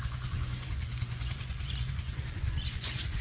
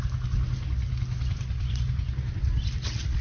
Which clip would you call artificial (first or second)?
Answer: first